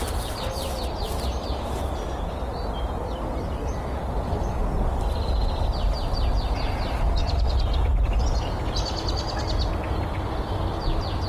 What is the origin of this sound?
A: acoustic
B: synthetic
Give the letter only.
A